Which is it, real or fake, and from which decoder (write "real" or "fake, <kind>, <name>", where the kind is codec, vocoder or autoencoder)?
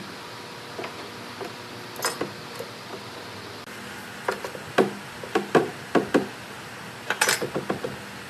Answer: real